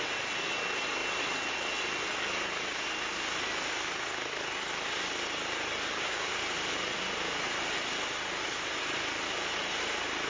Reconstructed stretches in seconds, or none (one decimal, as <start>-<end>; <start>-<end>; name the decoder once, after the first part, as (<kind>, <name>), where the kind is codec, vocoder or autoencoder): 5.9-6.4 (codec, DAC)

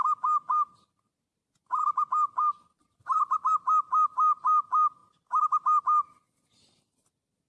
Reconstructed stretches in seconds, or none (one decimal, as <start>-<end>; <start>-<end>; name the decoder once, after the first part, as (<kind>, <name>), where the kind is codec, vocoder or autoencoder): none

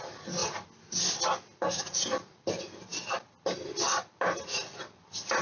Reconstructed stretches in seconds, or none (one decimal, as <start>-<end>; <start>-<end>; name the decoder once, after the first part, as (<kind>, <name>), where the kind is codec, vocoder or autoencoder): none

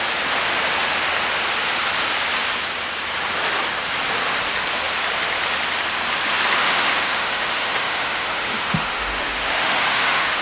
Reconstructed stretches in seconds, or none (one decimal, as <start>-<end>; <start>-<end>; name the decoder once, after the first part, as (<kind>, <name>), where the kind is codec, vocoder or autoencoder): 6.6-10.4 (autoencoder, DAC-VAE)